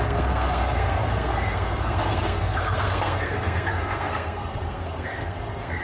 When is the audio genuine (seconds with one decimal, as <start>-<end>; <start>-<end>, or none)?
none